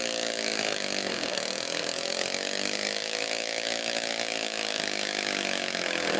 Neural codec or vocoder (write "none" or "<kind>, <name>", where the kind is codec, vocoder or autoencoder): autoencoder, DAC-VAE